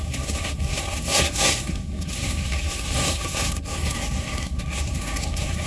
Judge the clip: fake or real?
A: fake